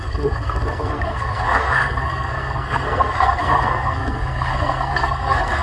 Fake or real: fake